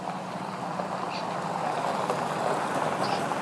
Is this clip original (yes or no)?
yes